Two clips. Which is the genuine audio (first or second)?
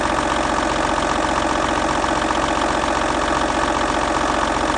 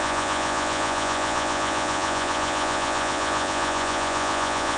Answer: first